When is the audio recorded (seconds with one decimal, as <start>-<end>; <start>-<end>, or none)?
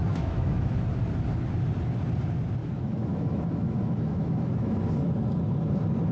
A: 0.7-2.6; 4.7-6.1